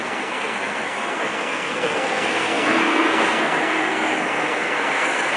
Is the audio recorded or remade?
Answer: remade